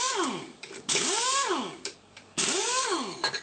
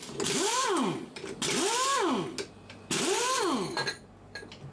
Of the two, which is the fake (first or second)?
first